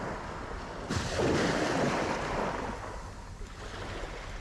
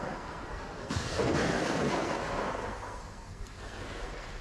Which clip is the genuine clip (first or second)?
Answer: first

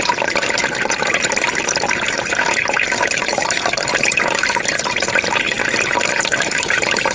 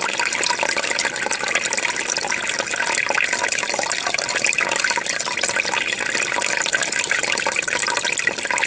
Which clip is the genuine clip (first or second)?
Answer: second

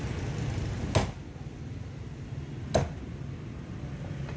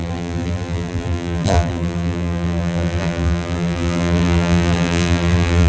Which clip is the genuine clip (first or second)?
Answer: first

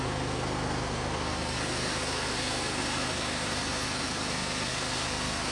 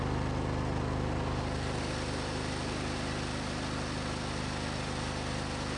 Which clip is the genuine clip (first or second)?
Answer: second